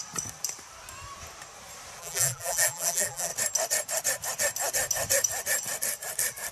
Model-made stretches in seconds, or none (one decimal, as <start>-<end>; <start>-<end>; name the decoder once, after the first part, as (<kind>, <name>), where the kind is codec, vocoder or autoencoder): 2.0-3.3 (vocoder, BigVGAN v2)